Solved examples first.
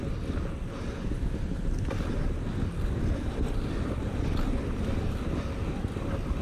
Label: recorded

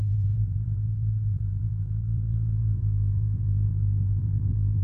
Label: remade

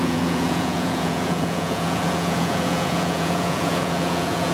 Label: remade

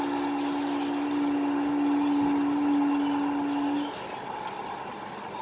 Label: recorded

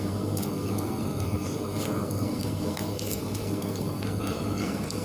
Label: remade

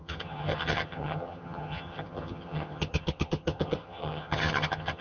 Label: remade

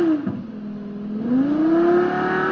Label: recorded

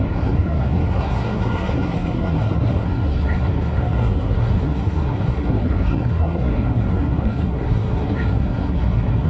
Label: remade